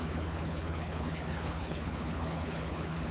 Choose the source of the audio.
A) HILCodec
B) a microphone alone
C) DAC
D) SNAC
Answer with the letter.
A